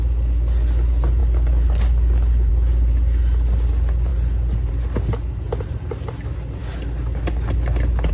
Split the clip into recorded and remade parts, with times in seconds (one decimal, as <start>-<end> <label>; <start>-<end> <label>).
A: 0.0-8.1 recorded